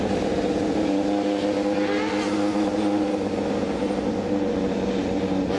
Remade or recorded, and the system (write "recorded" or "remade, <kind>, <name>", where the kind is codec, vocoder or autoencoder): recorded